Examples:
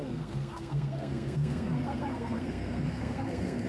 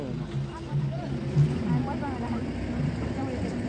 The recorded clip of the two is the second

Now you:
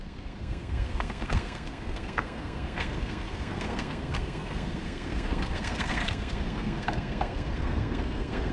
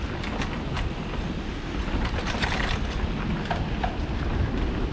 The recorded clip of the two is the second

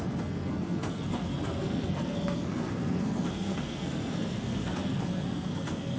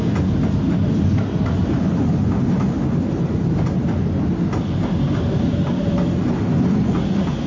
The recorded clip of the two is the second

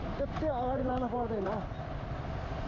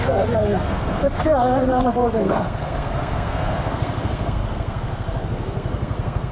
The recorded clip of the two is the first